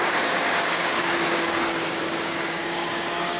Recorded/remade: remade